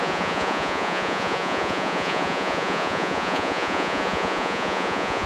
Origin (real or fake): fake